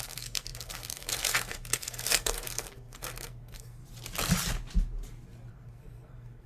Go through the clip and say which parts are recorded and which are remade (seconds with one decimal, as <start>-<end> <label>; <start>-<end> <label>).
0.0-3.8 remade; 3.8-5.5 recorded; 5.5-6.5 remade